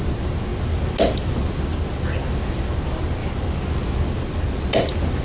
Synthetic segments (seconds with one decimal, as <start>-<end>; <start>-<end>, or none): none